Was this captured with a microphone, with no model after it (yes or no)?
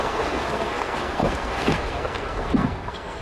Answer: no